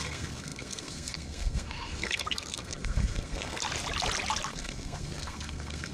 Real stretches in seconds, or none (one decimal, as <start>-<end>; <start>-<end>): 3.6-4.5